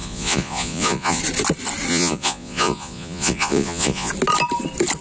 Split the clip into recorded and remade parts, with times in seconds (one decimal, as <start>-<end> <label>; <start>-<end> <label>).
0.0-1.2 remade; 1.2-1.9 recorded; 1.9-4.1 remade; 4.1-5.0 recorded